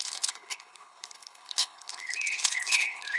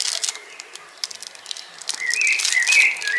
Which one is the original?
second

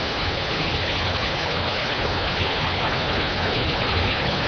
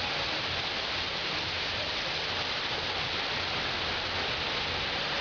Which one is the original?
second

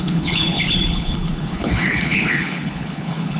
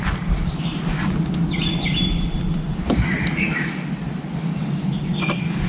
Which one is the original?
second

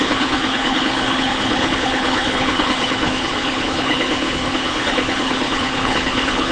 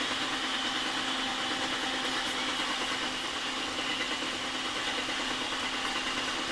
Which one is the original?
second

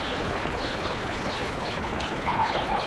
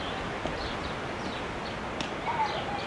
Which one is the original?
second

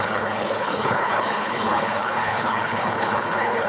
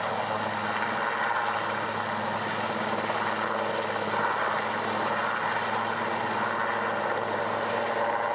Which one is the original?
second